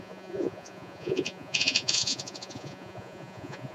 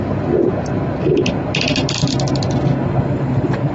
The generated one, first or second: first